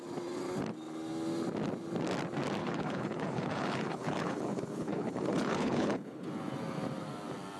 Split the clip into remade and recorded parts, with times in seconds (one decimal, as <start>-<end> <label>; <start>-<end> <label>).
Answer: 0.0-2.6 recorded; 2.6-6.3 remade; 6.3-7.6 recorded